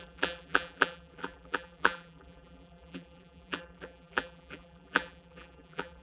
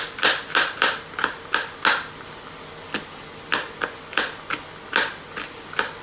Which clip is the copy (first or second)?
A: first